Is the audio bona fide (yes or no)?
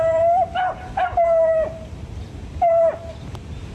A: yes